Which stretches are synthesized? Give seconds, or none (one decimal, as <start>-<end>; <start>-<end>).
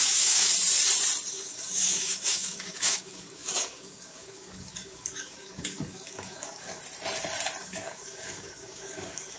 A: 0.0-0.5; 1.3-6.8; 7.6-9.4